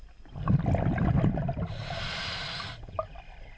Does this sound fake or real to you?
real